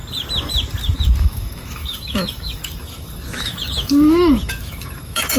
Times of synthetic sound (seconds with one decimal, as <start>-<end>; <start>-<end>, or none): 1.2-5.4